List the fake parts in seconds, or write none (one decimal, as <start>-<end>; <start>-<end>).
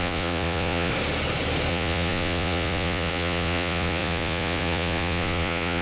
0.0-0.9; 1.7-5.8